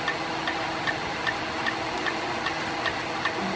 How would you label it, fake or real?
real